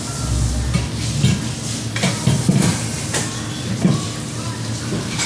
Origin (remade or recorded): recorded